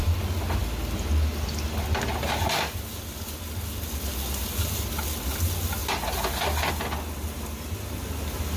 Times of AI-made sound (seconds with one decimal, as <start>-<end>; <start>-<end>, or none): none